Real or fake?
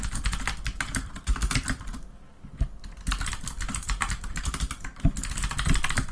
real